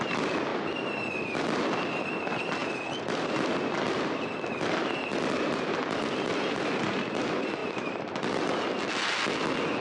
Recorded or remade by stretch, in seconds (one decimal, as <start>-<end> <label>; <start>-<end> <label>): 0.0-2.6 recorded; 2.6-6.4 remade; 6.4-7.6 recorded; 7.6-8.3 remade; 8.3-9.8 recorded